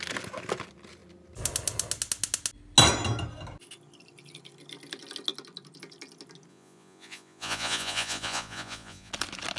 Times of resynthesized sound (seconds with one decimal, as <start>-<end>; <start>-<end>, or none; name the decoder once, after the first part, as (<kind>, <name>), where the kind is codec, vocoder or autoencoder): 6.5-9.1 (vocoder, Vocos)